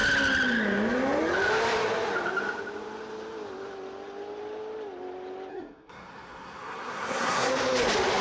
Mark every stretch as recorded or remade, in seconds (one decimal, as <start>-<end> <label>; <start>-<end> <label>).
0.0-5.5 recorded; 5.5-7.5 remade; 7.5-8.2 recorded